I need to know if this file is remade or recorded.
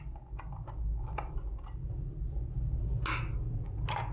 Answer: recorded